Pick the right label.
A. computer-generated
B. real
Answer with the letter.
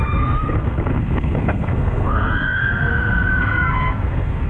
A